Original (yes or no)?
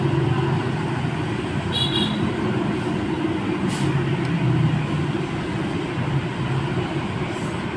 yes